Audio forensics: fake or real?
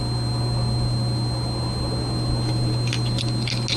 real